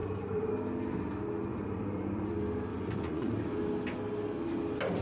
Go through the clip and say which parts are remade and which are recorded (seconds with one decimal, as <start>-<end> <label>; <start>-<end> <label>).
0.0-0.5 remade; 0.5-1.5 recorded; 1.5-2.3 remade; 2.3-2.7 recorded; 2.7-3.3 remade; 3.3-5.0 recorded